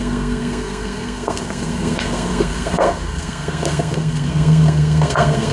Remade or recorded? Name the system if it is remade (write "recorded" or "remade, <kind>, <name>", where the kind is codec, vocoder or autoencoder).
remade, codec, SNAC